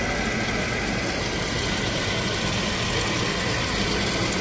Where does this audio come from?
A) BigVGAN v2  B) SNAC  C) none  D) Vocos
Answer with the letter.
C